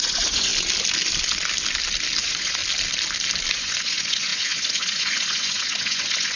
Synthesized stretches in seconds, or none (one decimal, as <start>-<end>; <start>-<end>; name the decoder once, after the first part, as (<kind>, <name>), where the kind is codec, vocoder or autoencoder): 0.0-0.5 (vocoder, Vocos); 2.2-2.6; 3.5-6.4